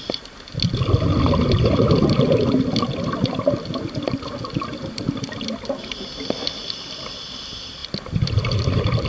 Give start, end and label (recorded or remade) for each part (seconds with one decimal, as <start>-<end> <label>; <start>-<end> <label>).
0.0-9.1 recorded